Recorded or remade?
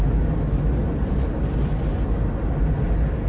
recorded